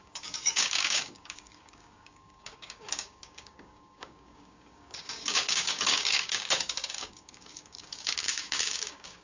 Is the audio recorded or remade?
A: remade